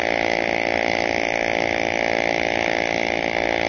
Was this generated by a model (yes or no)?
no